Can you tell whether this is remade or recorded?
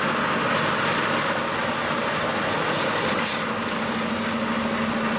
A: recorded